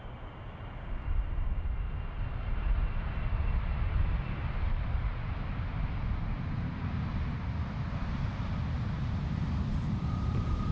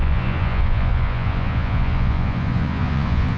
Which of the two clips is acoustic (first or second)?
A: first